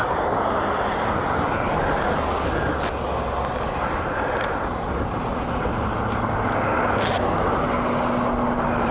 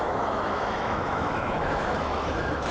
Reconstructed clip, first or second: second